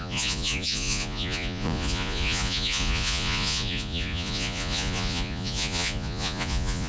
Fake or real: fake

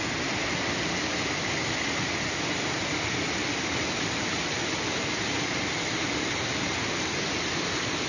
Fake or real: real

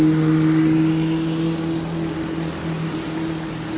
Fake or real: real